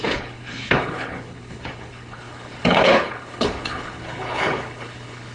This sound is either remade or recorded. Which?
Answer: remade